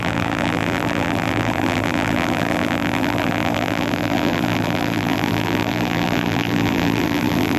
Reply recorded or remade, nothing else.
remade